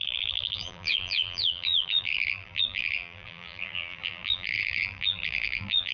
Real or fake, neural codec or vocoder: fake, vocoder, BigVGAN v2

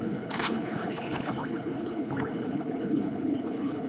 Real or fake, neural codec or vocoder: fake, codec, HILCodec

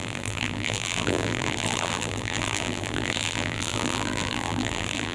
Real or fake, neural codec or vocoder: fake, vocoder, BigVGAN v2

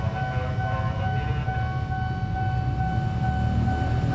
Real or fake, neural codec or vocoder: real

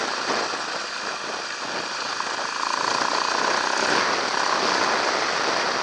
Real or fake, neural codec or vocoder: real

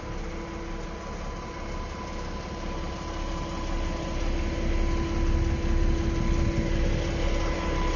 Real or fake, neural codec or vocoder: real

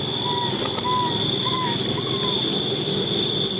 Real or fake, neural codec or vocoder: real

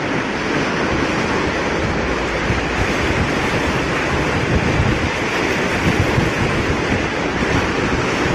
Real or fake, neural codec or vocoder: real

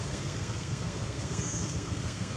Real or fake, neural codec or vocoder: fake, codec, SNAC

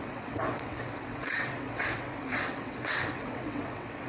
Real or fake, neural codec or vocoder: fake, vocoder, WaveNeXt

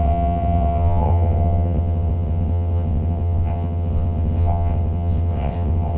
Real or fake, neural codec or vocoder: fake, vocoder, WaveNeXt